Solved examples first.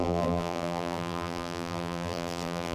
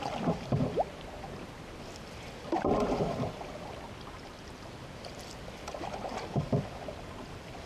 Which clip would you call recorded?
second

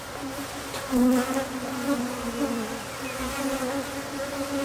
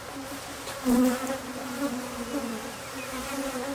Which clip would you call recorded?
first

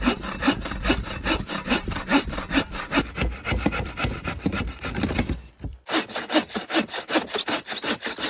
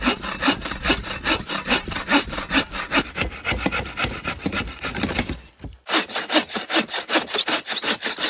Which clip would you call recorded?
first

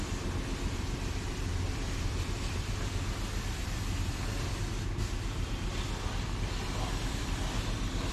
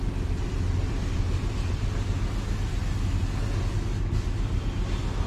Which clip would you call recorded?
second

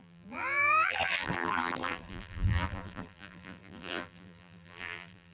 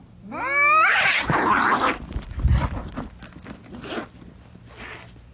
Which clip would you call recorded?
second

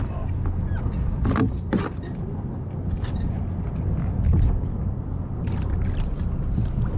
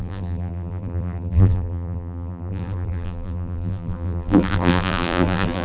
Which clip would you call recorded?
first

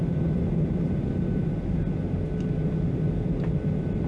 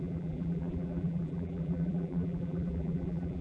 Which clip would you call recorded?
first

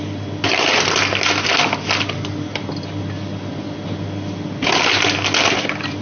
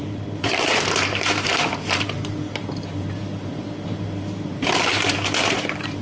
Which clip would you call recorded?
first